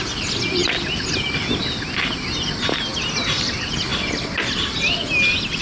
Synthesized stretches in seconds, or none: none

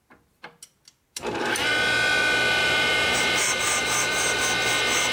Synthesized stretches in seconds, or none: 2.6-4.4 (vocoder, BigVGAN v2)

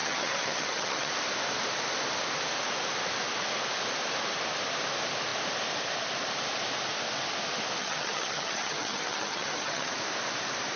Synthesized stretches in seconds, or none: 0.0-1.1 (vocoder, HiFi-GAN); 7.8-9.9

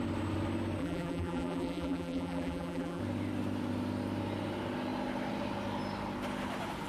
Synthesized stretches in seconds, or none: 0.8-3.0 (vocoder, BigVGAN v2)

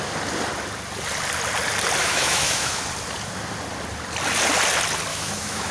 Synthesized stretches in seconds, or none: 2.0-2.8 (autoencoder, DAC-VAE); 5.1-5.7

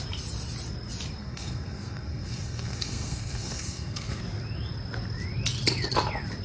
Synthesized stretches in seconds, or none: 1.2-4.2 (codec, SNAC)

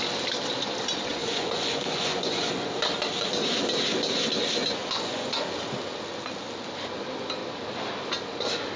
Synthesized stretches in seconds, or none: 1.1-2.7 (vocoder, Vocos); 4.7-5.5